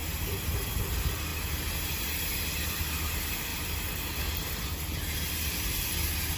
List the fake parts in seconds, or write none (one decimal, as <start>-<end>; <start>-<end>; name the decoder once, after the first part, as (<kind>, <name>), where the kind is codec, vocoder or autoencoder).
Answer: none